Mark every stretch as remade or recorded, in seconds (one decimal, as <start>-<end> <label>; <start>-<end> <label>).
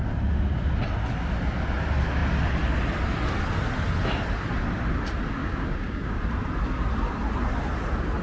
0.0-5.4 recorded; 5.4-6.2 remade; 6.2-8.2 recorded